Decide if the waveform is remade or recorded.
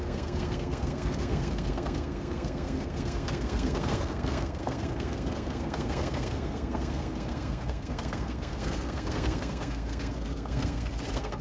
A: remade